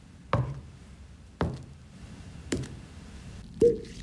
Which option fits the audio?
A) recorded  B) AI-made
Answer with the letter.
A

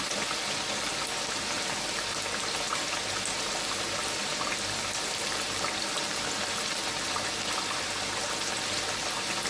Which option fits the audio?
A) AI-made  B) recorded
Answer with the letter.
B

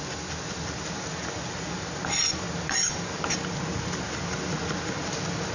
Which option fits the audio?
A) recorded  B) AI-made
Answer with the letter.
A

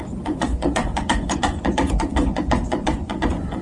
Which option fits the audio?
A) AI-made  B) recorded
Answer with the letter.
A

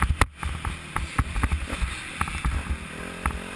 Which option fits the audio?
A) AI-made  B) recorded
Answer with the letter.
B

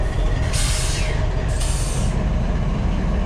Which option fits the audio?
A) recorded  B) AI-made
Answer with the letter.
A